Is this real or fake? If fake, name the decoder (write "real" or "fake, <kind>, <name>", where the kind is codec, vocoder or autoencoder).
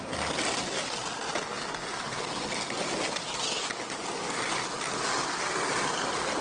real